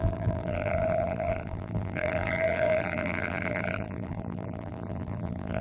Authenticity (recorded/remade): remade